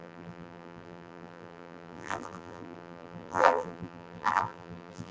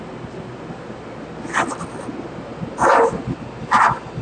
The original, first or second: second